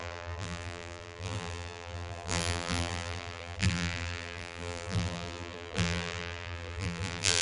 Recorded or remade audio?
remade